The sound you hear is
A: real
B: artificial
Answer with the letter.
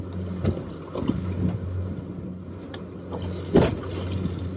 A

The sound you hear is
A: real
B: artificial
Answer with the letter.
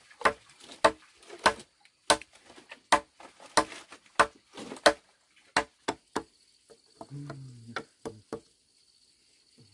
A